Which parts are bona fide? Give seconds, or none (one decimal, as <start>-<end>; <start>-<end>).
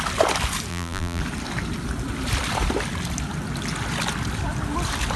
0.0-0.7; 1.2-5.2